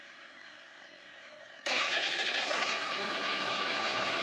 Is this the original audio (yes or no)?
no